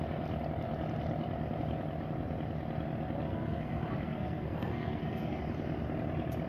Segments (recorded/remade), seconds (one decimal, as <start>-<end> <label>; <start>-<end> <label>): 0.0-3.3 recorded; 3.3-5.4 remade; 5.4-6.5 recorded